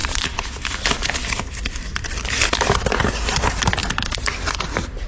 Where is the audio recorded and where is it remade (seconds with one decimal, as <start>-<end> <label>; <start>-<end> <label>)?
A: 0.0-5.1 recorded